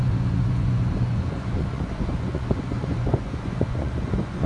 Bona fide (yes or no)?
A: no